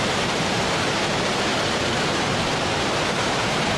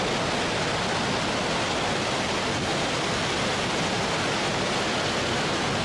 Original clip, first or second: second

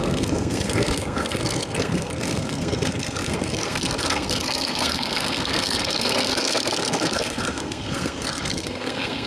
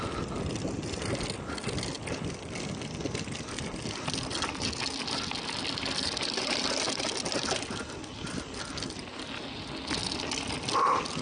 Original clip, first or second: second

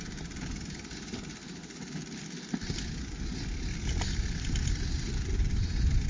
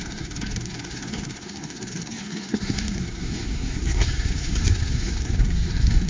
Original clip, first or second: first